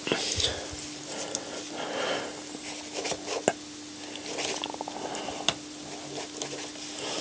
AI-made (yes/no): no